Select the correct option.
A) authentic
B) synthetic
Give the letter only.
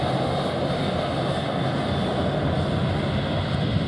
A